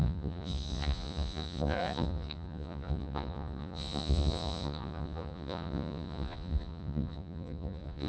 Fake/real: fake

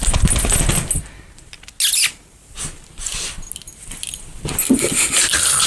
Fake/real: real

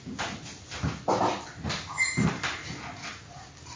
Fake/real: real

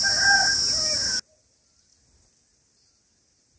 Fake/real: real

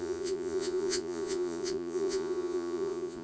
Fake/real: fake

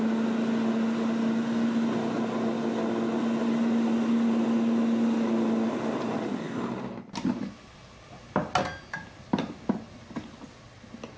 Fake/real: real